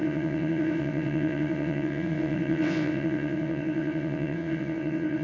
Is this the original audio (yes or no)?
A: no